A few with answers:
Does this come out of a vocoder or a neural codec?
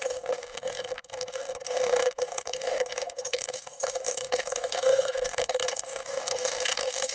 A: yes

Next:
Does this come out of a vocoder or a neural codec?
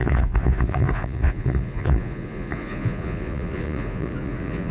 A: yes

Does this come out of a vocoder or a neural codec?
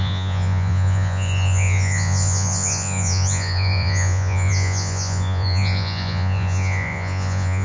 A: yes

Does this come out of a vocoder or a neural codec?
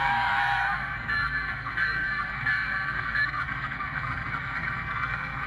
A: yes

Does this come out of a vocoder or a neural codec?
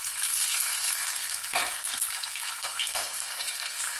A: yes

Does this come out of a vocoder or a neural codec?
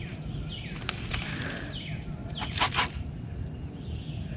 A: no